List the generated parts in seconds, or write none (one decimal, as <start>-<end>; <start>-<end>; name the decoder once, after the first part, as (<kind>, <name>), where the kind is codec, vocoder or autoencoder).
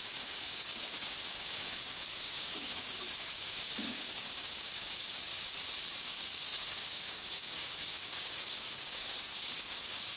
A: 0.0-5.3 (codec, DAC); 6.0-10.2